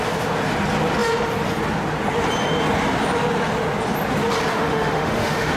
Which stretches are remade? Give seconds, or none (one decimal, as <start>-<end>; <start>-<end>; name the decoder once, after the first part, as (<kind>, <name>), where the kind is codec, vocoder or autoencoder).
4.5-5.6 (autoencoder, DAC-VAE)